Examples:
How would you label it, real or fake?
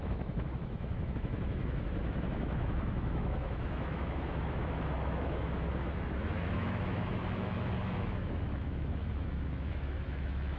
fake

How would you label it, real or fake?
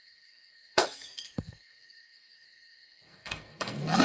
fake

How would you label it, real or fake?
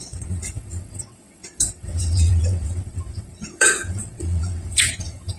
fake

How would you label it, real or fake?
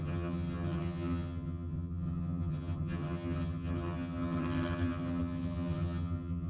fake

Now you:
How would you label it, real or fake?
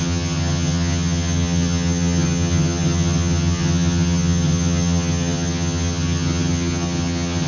fake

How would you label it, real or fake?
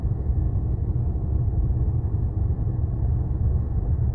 real